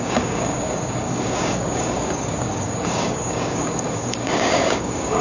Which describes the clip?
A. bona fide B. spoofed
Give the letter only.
B